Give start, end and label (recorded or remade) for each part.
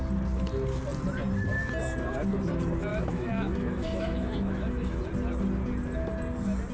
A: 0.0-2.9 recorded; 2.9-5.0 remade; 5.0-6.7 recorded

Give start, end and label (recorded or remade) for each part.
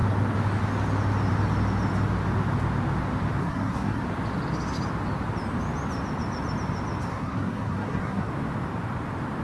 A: 0.0-3.4 recorded; 3.4-4.0 remade; 4.0-7.1 recorded; 7.1-8.3 remade; 8.3-9.4 recorded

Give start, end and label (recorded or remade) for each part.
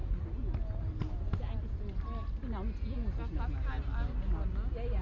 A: 0.0-5.0 recorded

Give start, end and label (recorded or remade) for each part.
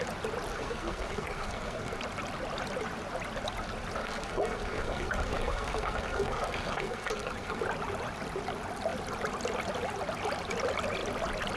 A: 0.0-0.5 recorded; 0.5-2.0 remade; 2.0-4.0 recorded; 4.0-7.6 remade; 7.6-11.6 recorded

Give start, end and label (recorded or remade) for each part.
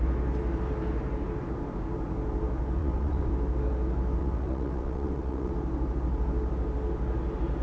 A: 0.0-2.8 recorded; 2.8-3.3 remade; 3.3-4.2 recorded; 4.2-5.5 remade; 5.5-7.6 recorded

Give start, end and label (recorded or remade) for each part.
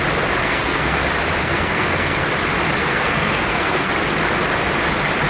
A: 0.0-0.4 recorded; 0.4-1.0 remade; 1.0-1.4 recorded; 1.4-2.3 remade; 2.3-2.8 recorded; 2.8-3.9 remade; 3.9-5.3 recorded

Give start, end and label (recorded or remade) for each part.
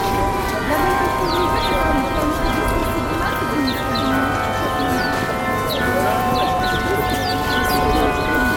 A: 0.0-2.8 remade; 2.8-5.8 recorded; 5.8-8.6 remade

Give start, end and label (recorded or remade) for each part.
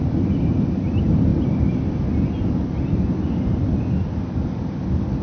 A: 0.0-5.2 recorded